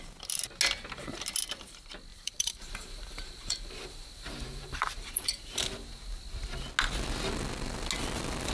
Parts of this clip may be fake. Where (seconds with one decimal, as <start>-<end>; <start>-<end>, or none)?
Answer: 2.1-5.6